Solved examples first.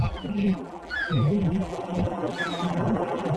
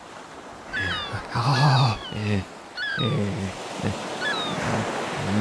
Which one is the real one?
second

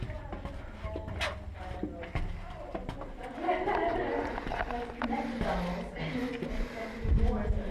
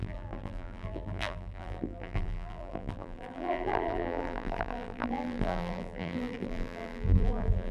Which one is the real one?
first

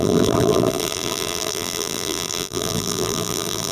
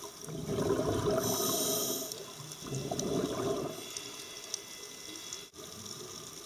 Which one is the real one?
second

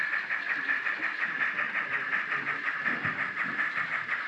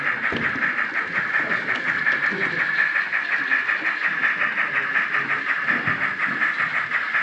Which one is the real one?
second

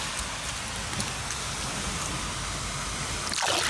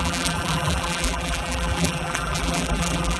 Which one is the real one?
first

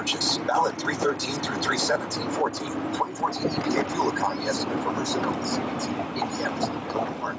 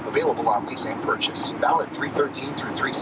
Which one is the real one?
second